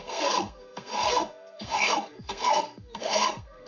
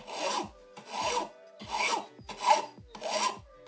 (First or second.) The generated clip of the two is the first